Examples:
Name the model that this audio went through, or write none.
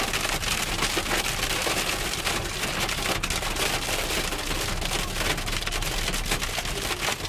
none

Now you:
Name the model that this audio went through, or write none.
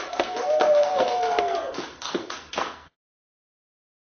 codec, SNAC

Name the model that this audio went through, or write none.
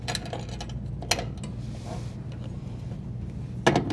none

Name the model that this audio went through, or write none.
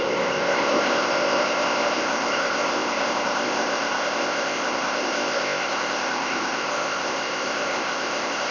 codec, ZipCodec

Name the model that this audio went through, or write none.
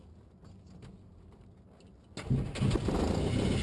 none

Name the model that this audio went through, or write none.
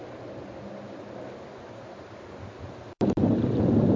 none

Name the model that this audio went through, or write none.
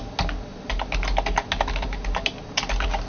none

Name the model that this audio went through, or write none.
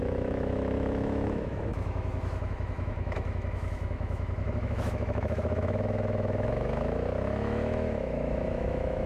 autoencoder, DAC-VAE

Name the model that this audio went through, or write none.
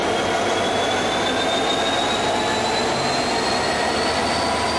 none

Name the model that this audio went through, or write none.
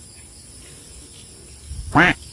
none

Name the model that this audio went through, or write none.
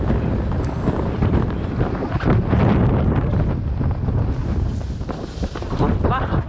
none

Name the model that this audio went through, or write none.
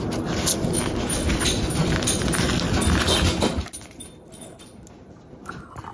none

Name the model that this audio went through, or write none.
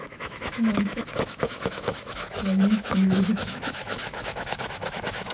autoencoder, DAC-VAE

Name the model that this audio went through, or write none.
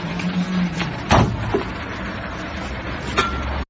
none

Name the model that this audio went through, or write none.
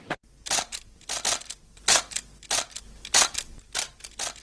none